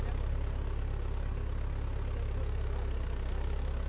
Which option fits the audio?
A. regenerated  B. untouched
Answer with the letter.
B